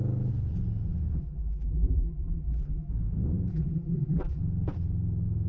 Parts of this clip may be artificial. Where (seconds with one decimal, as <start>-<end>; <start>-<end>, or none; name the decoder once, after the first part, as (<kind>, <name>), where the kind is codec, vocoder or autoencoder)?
1.2-2.9 (vocoder, BigVGAN v2); 3.5-4.4